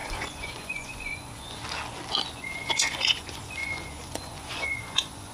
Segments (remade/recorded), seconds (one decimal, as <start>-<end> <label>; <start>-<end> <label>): 0.0-1.6 remade; 1.6-2.3 recorded; 2.3-5.3 remade